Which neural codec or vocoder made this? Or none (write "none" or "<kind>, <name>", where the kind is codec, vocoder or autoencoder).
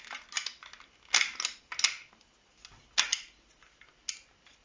none